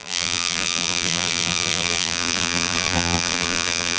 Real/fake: fake